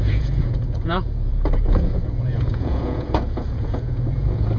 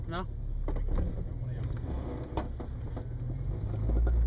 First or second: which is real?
second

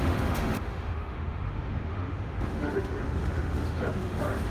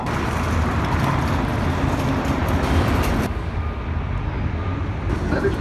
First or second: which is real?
second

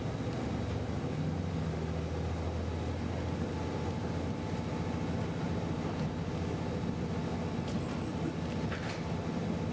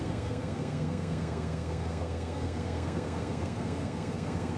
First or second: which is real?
first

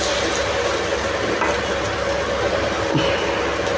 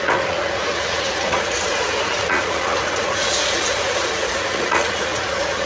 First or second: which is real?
first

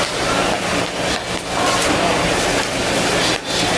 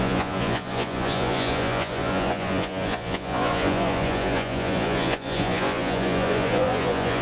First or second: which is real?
first